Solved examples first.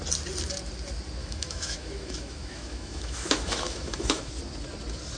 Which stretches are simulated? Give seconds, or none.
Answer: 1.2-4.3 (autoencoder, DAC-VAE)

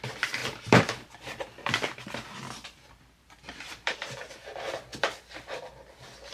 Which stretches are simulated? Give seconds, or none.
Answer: 0.4-4.2 (vocoder, BigVGAN v2)

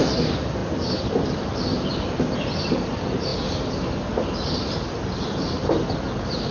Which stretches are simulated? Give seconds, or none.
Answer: none

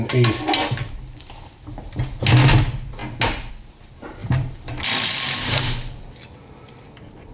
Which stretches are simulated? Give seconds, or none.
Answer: 4.2-6.0 (vocoder, BigVGAN v2)

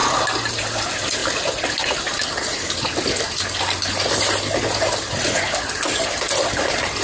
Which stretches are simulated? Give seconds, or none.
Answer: none

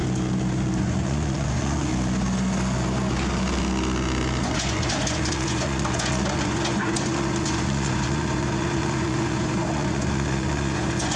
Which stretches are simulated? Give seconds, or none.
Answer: 0.8-1.9 (vocoder, Vocos); 4.4-11.2